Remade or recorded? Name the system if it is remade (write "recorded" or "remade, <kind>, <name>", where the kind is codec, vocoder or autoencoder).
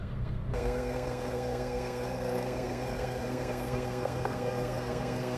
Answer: remade, codec, SNAC